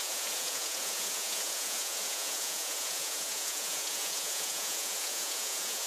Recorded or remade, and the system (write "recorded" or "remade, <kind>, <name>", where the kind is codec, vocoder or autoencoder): remade, vocoder, Vocos